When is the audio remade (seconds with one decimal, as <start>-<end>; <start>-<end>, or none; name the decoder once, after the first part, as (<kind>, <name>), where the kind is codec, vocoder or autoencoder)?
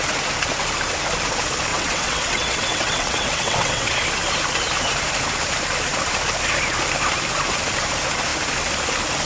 1.7-3.9 (vocoder, WaveNeXt)